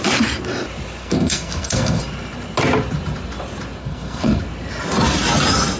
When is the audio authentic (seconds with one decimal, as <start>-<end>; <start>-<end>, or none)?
0.0-1.0; 2.0-3.8; 4.4-5.8